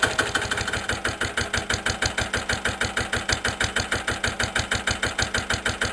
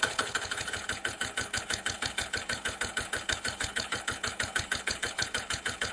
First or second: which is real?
first